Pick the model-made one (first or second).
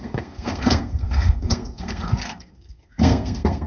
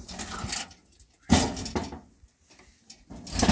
first